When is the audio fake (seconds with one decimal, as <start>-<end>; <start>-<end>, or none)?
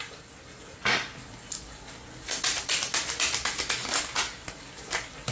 none